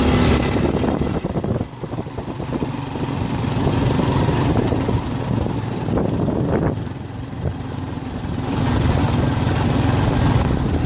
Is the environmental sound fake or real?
real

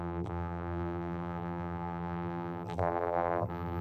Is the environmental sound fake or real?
fake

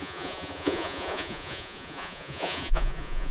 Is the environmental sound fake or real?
fake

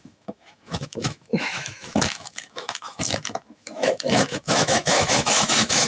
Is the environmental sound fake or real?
fake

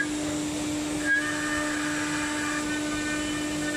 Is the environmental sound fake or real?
real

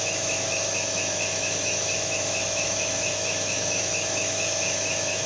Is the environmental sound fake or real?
fake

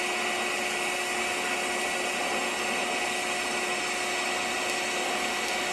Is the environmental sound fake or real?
real